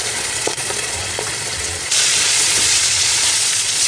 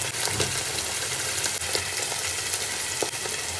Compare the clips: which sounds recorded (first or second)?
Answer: second